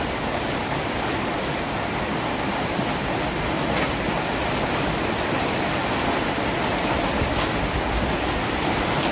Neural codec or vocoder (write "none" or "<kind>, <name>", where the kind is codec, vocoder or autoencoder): none